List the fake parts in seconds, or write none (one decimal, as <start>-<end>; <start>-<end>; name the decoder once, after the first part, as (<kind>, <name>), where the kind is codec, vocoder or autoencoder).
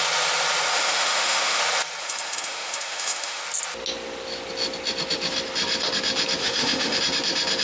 0.7-1.6 (autoencoder, DAC-VAE); 2.0-3.4; 6.4-7.0